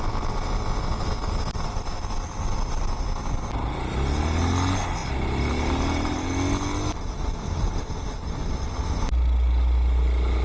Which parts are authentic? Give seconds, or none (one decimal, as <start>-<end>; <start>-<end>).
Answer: 0.0-10.4